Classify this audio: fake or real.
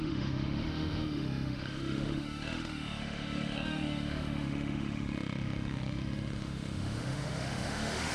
fake